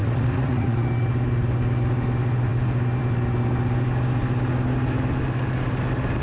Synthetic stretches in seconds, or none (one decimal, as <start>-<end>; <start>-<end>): 0.0-0.9

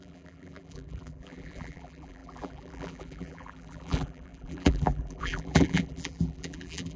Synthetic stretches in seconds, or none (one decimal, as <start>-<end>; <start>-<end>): 0.0-7.0